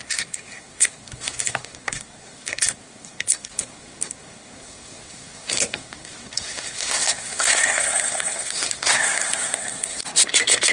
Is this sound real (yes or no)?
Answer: no